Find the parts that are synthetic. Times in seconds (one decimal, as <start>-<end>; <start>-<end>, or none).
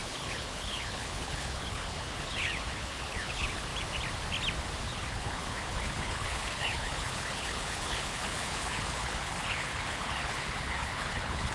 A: 0.0-3.7; 4.8-11.5